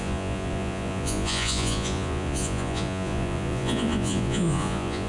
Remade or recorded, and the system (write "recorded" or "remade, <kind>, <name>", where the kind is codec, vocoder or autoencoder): remade, vocoder, Vocos